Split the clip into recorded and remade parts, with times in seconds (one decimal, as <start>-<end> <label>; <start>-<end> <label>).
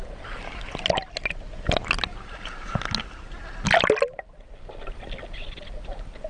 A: 0.0-6.3 recorded